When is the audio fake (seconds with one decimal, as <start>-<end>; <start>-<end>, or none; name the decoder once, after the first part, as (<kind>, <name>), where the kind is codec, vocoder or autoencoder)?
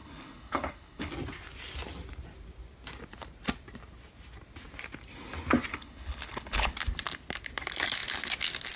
0.0-1.1 (codec, HILCodec); 5.7-6.7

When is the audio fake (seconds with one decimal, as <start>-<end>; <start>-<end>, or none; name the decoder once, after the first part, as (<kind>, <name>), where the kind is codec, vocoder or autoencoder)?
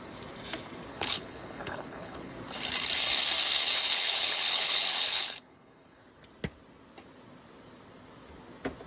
0.9-2.3 (codec, HILCodec); 3.9-6.0